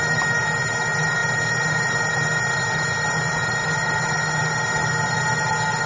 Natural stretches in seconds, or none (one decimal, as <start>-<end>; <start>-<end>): 0.0-5.9